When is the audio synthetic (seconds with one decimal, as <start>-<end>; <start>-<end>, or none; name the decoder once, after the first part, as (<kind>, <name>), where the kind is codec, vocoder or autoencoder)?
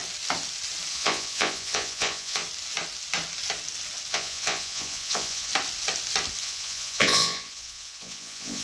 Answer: 0.9-2.4 (vocoder, Vocos); 4.1-5.5; 6.4-8.6